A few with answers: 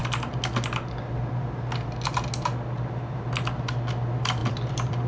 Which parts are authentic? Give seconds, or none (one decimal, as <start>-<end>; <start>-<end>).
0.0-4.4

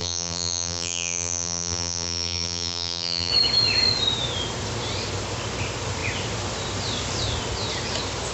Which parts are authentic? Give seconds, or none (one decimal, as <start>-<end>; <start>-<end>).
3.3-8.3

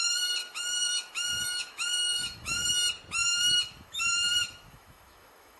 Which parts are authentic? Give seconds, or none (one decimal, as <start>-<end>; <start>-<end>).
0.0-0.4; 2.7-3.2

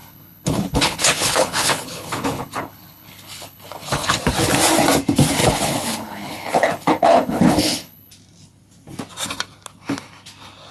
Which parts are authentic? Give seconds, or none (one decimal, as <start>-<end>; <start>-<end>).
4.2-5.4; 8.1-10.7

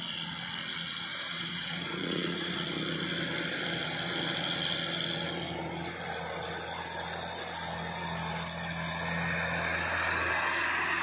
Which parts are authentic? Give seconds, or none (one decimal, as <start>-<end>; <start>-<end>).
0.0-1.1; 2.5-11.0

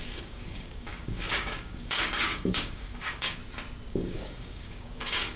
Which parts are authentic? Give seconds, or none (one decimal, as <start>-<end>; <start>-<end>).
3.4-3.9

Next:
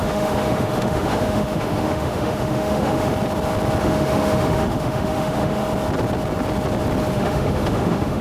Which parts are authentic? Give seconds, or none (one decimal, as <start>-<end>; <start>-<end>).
3.1-3.8; 5.6-7.1